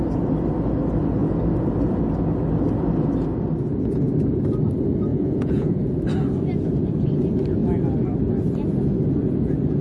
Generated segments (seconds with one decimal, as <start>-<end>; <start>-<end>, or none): 5.1-5.8